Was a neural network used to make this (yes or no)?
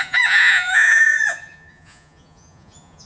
yes